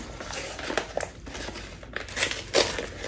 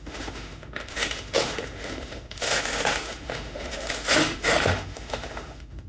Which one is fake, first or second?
second